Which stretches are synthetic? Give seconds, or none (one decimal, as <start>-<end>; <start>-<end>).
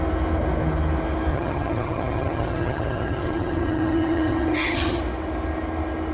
1.3-5.0